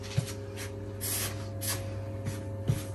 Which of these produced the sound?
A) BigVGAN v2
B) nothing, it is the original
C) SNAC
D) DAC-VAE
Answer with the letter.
B